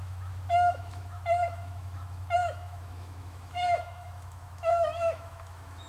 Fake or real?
fake